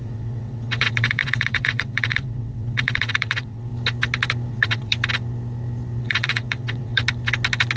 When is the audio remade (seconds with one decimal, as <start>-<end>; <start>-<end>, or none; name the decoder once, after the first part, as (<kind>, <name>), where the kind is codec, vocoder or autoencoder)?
0.0-3.7 (vocoder, WaveNeXt); 4.5-4.9; 6.0-7.0